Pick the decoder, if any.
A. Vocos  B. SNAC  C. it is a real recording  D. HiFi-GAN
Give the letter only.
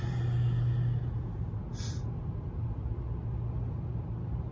C